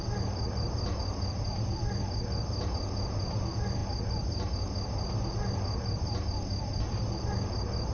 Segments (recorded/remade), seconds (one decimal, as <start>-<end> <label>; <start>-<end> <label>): 0.0-7.9 recorded

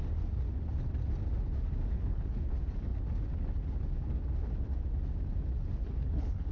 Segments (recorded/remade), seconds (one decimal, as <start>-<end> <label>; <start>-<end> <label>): 0.0-1.9 recorded; 1.9-2.5 remade; 2.5-5.8 recorded; 5.8-6.5 remade

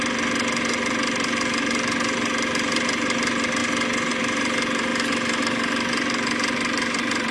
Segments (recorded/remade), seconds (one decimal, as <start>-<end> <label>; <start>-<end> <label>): 0.0-3.6 remade; 3.6-4.1 recorded; 4.1-7.3 remade

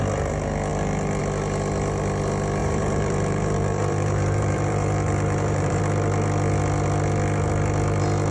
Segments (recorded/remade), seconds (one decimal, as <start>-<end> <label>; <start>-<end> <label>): 0.0-2.6 recorded; 2.6-5.8 remade; 5.8-8.3 recorded

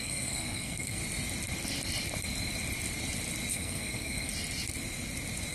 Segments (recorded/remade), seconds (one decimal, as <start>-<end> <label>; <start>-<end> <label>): 0.0-1.0 remade; 1.0-3.5 recorded; 3.5-4.3 remade; 4.3-5.5 recorded

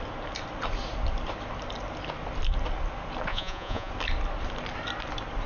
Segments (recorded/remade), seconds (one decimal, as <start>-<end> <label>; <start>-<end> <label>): 0.0-3.3 recorded; 3.3-3.9 remade; 3.9-5.5 recorded

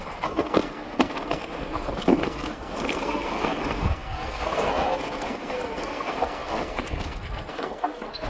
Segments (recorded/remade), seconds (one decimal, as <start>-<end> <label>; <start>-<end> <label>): 0.0-8.3 remade

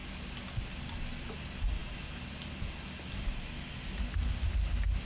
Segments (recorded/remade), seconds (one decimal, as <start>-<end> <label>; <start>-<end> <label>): 0.0-5.0 recorded